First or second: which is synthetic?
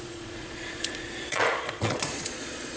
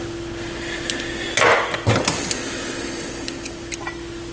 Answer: first